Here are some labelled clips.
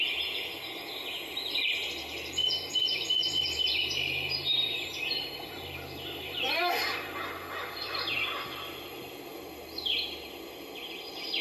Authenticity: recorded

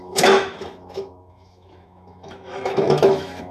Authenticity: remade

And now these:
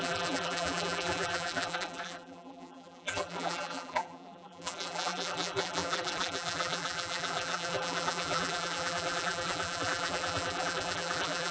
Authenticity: remade